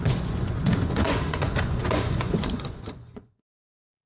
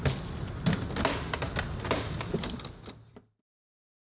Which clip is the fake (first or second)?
first